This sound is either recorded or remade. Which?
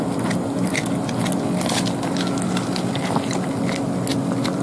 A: recorded